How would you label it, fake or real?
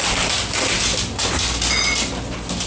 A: real